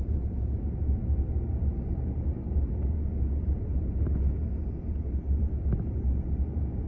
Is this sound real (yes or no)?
yes